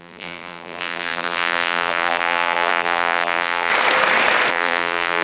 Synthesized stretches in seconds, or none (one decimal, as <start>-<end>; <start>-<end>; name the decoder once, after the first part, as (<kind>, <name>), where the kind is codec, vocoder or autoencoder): 0.0-3.7 (vocoder, BigVGAN v2); 4.5-5.2